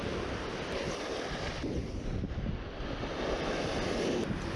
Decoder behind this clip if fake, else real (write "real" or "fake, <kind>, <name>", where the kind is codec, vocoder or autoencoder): real